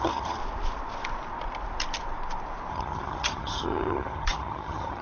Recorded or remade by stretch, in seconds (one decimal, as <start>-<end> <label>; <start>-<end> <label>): 0.0-0.4 remade; 0.4-2.7 recorded; 2.7-5.0 remade

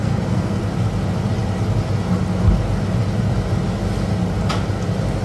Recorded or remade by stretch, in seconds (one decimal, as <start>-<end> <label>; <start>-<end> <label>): 0.0-0.6 remade; 0.6-5.2 recorded

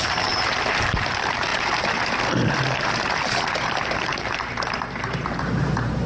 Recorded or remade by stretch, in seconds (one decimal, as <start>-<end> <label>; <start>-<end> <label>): 0.0-6.1 remade

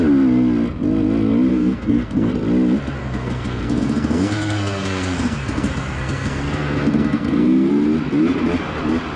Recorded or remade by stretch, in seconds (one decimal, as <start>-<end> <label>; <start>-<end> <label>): 0.0-1.5 recorded; 1.5-2.3 remade; 2.3-3.0 recorded; 3.0-7.7 remade; 7.7-9.2 recorded